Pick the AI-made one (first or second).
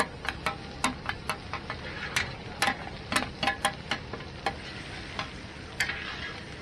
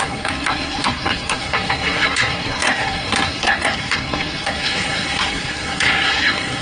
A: second